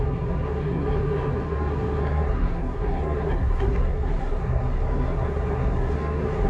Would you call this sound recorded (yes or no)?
no